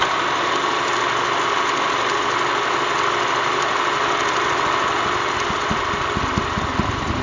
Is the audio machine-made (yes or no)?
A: no